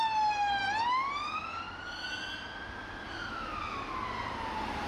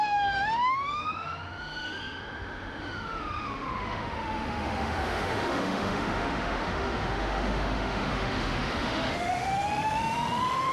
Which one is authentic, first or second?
first